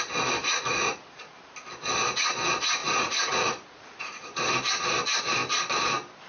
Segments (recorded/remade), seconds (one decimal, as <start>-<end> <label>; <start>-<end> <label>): 0.0-0.4 recorded; 0.4-1.3 remade; 1.3-2.8 recorded; 2.8-4.5 remade; 4.5-6.3 recorded

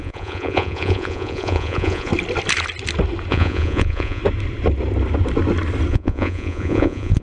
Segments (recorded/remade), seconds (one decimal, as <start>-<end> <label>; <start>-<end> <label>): 0.0-2.1 remade; 2.1-3.3 recorded; 3.3-4.2 remade; 4.2-5.9 recorded; 5.9-7.2 remade

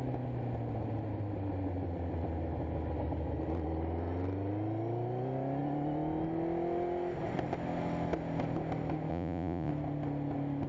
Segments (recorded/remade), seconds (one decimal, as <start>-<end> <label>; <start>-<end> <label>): 0.0-9.1 recorded; 9.1-9.7 remade; 9.7-10.7 recorded

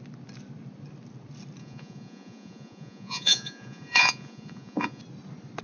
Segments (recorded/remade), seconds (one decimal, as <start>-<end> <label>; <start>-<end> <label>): 0.0-1.6 recorded; 1.6-5.0 remade; 5.0-5.6 recorded